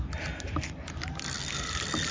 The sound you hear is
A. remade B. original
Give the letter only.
B